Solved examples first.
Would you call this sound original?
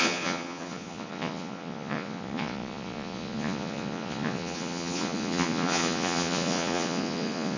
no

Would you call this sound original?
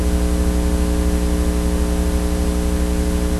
yes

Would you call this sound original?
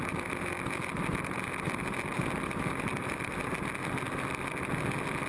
yes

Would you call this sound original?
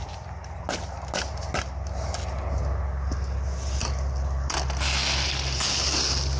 yes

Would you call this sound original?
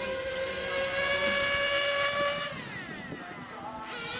yes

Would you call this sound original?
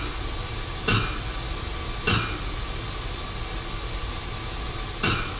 yes